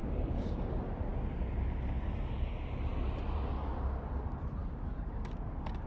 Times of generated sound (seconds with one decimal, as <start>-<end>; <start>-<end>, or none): 0.0-0.6